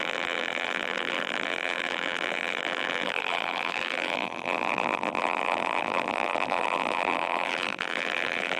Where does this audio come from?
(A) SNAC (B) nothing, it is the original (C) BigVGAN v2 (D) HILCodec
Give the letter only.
C